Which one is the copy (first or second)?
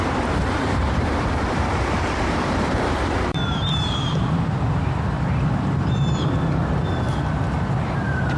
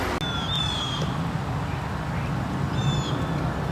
first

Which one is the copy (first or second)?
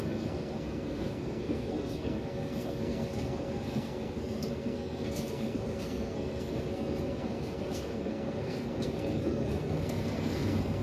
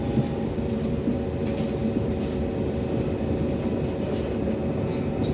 first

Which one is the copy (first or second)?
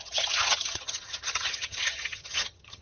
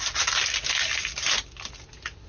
first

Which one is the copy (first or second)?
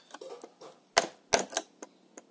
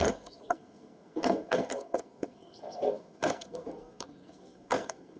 second